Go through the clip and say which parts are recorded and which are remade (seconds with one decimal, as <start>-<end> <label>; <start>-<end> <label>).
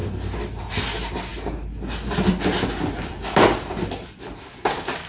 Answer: 0.0-5.1 recorded